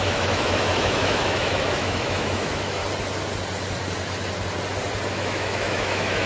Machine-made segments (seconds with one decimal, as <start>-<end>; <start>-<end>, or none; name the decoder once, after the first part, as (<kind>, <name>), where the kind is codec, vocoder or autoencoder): 0.0-2.8 (autoencoder, DAC-VAE); 5.1-6.3